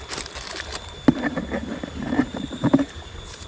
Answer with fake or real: fake